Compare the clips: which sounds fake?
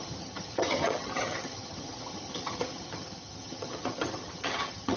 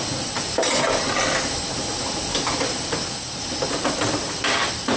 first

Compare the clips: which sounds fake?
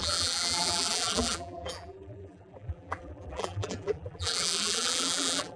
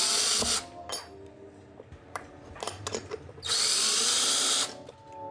first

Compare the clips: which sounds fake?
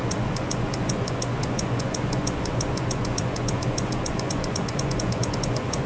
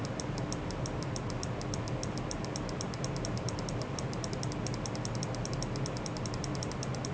first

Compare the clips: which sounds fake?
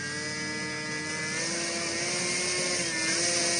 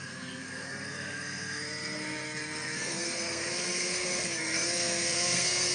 second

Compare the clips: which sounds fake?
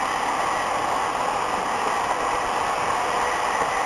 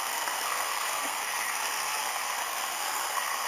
second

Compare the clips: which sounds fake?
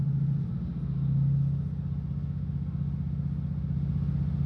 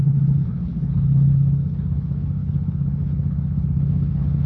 second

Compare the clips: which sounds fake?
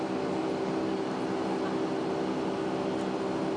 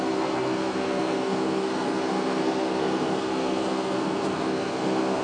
second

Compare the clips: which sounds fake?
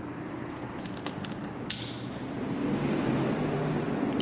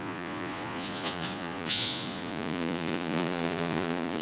second